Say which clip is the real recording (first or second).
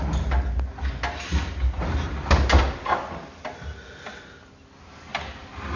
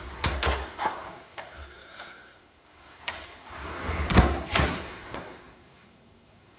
first